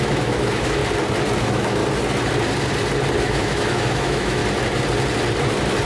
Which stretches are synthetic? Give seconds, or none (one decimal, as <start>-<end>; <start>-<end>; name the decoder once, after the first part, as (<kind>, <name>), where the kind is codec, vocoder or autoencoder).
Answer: 0.0-0.8 (autoencoder, DAC-VAE); 1.4-1.8; 3.2-4.4